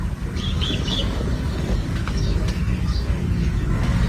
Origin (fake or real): fake